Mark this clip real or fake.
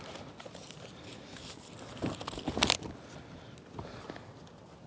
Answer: real